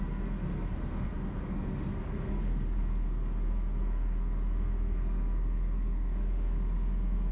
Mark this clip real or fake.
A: fake